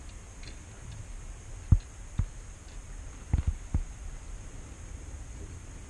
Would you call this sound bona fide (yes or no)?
yes